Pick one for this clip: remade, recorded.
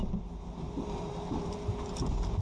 recorded